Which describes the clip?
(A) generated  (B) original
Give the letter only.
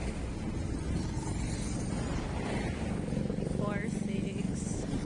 B